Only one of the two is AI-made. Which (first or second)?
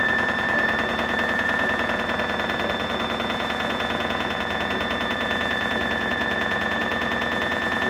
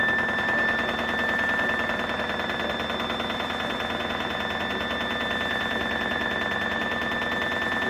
first